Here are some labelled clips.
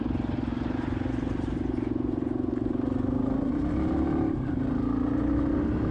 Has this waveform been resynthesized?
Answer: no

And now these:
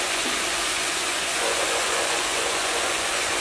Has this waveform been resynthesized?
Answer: yes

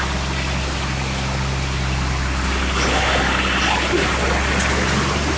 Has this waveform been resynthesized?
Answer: no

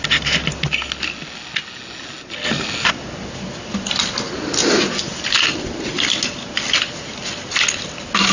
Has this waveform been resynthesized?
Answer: no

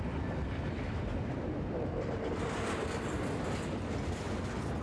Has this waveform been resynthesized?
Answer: no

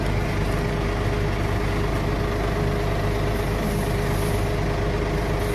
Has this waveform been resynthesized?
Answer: no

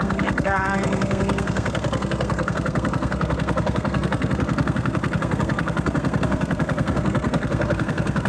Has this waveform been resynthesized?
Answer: yes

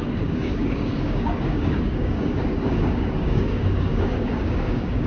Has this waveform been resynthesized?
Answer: yes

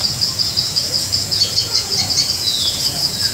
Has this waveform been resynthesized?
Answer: yes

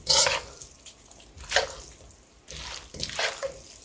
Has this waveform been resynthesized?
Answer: no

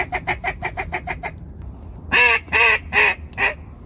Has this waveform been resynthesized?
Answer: no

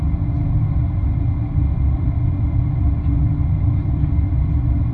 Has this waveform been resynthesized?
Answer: no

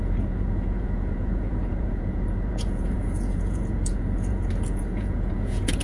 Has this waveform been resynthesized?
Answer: yes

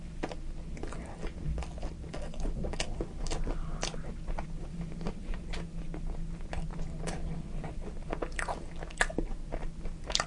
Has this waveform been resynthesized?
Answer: no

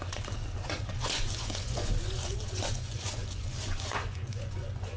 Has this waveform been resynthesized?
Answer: yes